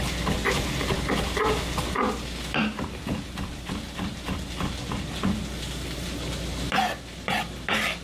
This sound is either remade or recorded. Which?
recorded